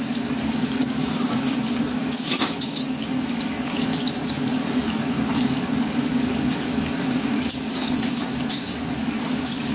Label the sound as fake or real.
fake